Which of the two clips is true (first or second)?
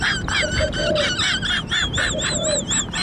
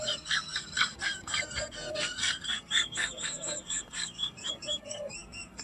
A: first